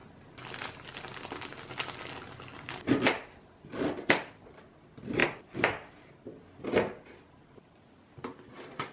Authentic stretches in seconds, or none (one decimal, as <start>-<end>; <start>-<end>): 0.0-8.9